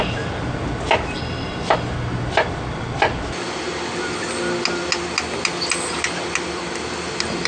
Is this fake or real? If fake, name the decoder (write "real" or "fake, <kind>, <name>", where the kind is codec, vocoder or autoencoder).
real